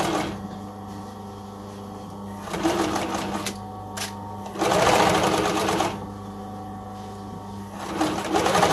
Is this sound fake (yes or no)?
no